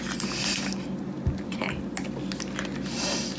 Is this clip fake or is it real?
real